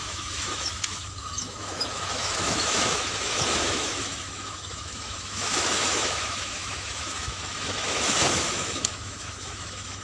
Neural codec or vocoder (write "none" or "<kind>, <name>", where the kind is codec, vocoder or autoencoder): autoencoder, DAC-VAE